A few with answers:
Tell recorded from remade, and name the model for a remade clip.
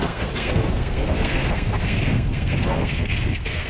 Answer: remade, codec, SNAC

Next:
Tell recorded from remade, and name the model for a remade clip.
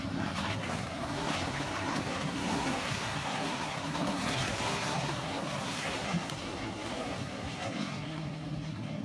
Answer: remade, codec, SNAC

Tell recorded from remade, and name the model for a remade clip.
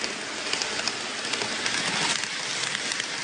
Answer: recorded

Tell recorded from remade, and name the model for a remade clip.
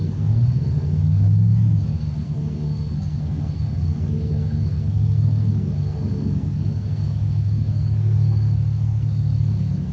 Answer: remade, codec, SNAC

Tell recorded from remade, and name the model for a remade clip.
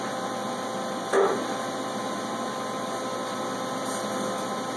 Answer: recorded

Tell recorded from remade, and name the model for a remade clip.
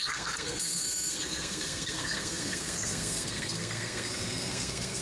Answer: remade, codec, SNAC